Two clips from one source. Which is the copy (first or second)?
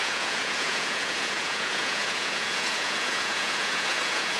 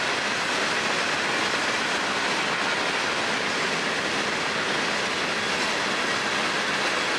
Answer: first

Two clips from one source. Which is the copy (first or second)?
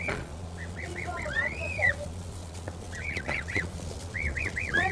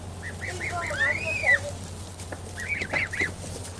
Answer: first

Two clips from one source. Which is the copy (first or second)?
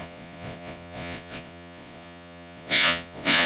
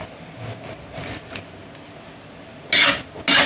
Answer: first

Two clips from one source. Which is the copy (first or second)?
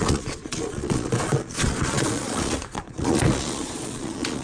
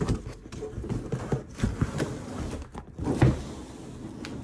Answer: first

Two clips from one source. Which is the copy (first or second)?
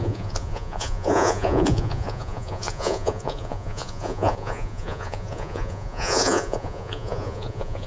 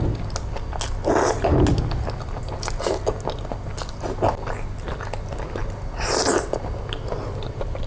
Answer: first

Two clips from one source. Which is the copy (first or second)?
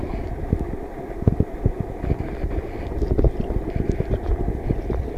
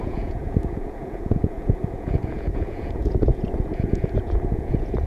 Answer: second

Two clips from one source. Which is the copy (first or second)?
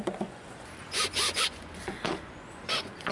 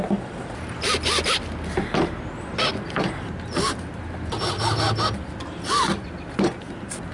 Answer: first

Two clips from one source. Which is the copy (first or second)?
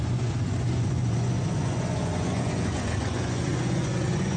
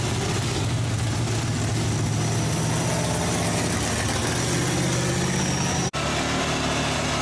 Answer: first